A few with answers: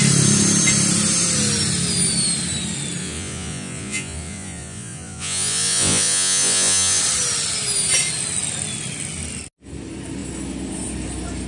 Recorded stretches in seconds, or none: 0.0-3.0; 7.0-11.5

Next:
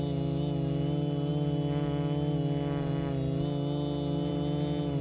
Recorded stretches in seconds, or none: 0.0-5.0

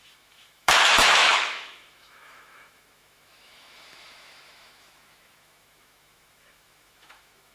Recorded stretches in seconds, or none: none

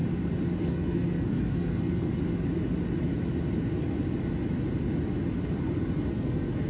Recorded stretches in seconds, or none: 0.0-0.6; 2.1-6.1